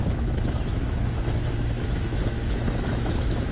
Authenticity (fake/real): fake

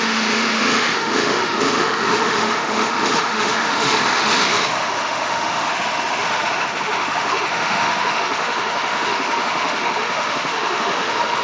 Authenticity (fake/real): fake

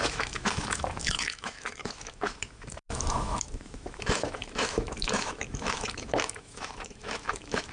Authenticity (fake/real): fake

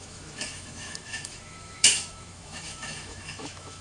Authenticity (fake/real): fake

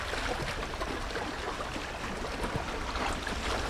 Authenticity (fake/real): real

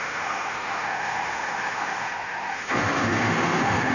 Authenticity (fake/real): fake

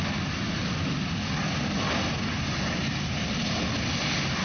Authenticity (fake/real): real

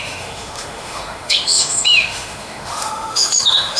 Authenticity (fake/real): fake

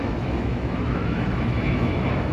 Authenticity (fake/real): fake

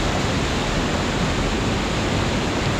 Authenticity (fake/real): real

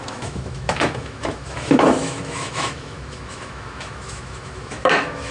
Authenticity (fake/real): fake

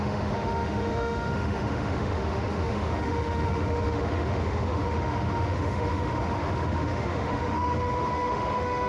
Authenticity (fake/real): fake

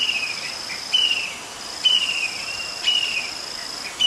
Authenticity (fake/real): real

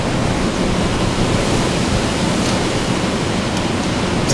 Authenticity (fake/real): real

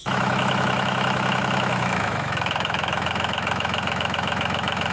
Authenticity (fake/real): fake